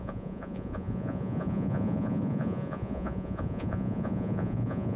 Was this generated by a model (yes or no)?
yes